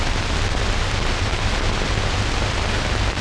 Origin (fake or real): real